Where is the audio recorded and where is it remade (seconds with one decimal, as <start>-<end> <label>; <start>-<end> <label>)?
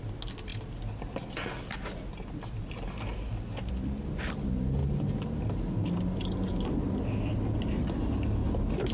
0.0-8.9 recorded